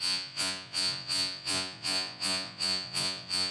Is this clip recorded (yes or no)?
no